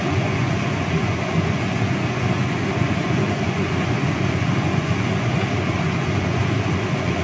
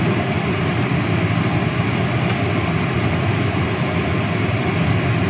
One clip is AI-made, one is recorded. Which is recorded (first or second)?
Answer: second